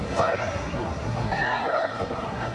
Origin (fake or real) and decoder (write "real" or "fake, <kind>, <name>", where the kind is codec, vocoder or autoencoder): fake, codec, SNAC